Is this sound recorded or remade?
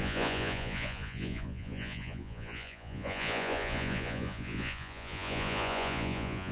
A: remade